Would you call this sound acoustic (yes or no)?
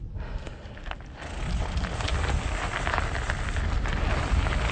yes